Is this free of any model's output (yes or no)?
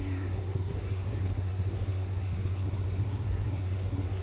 no